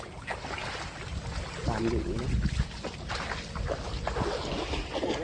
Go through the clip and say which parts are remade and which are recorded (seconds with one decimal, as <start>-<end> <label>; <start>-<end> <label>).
0.0-5.2 recorded